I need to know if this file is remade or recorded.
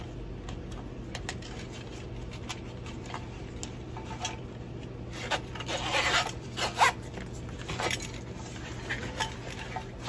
recorded